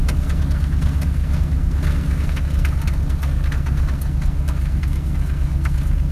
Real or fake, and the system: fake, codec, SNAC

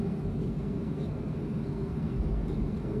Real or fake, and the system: fake, codec, SNAC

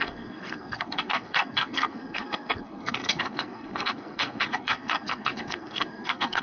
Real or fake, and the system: fake, codec, SNAC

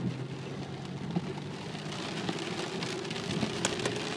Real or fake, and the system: real